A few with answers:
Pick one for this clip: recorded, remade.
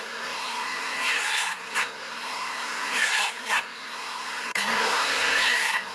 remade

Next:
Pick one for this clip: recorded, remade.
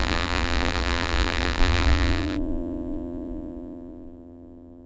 remade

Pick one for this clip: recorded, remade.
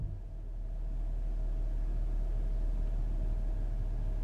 recorded